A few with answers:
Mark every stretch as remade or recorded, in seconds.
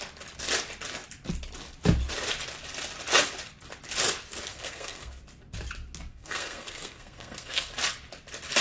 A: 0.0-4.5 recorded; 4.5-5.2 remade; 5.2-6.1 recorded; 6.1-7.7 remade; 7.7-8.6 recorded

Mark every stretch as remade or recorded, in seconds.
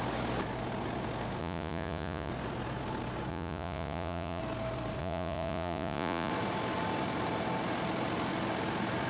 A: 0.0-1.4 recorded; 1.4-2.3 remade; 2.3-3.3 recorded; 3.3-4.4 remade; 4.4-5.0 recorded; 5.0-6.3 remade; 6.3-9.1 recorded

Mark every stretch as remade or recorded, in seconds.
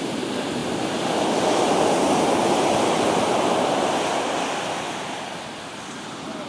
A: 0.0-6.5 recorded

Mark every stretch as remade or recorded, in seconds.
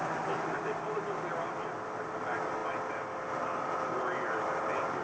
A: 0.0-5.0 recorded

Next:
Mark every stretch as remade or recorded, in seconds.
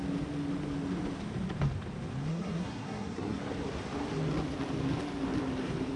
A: 0.0-2.3 recorded; 2.3-3.4 remade; 3.4-6.0 recorded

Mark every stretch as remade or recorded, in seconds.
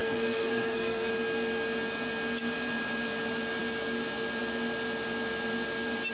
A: 0.0-1.1 remade; 1.1-6.1 recorded